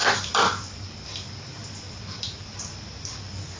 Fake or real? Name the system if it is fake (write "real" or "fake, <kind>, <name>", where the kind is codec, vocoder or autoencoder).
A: real